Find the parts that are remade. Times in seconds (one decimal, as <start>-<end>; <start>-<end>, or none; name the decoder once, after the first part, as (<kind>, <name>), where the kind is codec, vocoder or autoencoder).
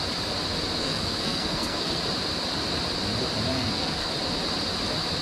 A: 0.8-2.0 (codec, SNAC); 3.5-4.1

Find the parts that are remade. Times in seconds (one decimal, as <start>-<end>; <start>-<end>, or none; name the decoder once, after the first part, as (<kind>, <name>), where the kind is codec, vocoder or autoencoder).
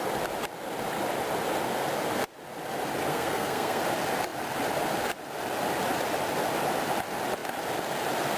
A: 3.1-3.8 (codec, SNAC)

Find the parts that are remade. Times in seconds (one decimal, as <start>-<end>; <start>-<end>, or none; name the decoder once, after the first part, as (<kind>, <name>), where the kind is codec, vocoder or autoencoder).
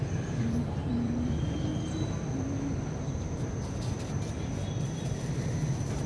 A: 0.0-1.7 (vocoder, BigVGAN v2); 5.4-6.1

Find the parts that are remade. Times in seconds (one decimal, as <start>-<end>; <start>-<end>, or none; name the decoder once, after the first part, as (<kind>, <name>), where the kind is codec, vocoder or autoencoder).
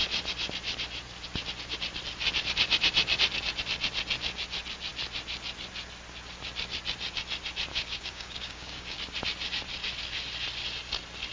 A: 7.7-9.0 (codec, DAC)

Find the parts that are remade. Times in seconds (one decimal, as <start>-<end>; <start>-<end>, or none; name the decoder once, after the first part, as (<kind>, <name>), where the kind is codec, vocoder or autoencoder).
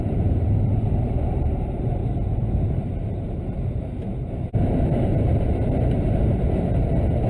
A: 0.0-2.0 (vocoder, BigVGAN v2); 2.7-4.1; 5.4-7.3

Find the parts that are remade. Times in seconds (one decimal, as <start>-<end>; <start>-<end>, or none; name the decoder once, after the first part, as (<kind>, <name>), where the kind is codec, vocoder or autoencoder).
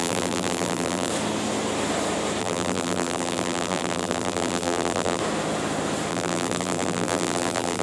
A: 0.0-1.1 (vocoder, BigVGAN v2); 2.4-5.2; 6.1-7.8